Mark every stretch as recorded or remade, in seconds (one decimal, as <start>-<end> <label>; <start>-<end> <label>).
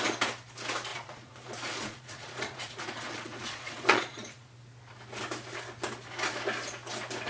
0.0-0.9 recorded; 0.9-4.5 remade; 4.5-7.3 recorded